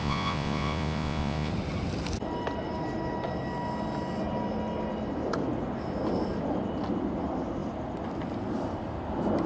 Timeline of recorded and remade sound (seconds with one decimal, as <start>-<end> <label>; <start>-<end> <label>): 0.0-1.5 remade; 1.5-9.5 recorded